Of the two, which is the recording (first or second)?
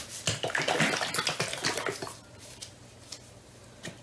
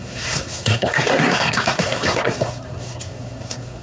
first